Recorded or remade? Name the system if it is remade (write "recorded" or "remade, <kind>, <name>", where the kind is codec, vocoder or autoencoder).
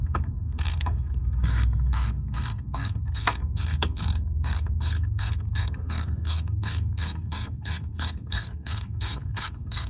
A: remade, codec, SNAC